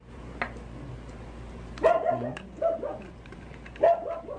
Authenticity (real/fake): real